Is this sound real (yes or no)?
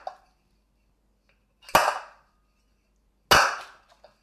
yes